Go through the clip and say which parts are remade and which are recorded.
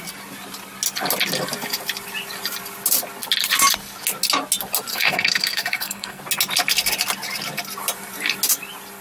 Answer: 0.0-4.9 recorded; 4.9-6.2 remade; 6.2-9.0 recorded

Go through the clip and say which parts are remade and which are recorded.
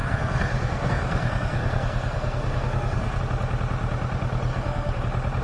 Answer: 0.0-3.2 remade; 3.2-4.5 recorded; 4.5-5.0 remade; 5.0-5.4 recorded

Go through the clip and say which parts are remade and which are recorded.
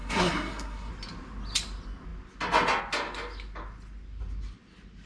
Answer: 0.0-0.9 remade; 0.9-5.1 recorded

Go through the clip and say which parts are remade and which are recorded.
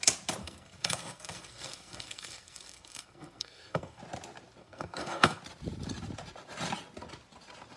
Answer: 0.0-0.4 recorded; 0.4-4.0 remade; 4.0-4.6 recorded; 4.6-5.4 remade; 5.4-7.8 recorded